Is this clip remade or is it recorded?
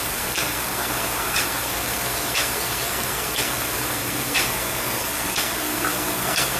remade